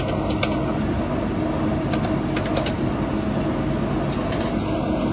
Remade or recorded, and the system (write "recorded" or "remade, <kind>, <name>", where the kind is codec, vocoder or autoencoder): recorded